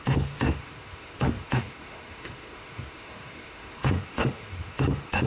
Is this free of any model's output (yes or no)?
no